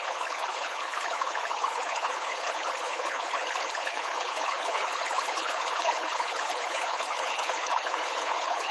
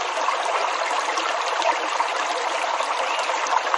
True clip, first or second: second